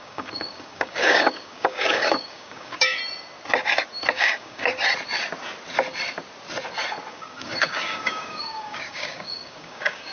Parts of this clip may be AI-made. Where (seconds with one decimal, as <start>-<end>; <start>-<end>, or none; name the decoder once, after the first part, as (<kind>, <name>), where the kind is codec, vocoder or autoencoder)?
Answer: 0.0-3.0 (codec, DAC); 4.1-4.7; 7.1-10.1